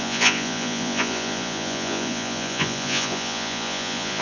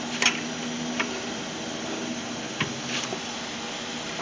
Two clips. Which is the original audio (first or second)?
second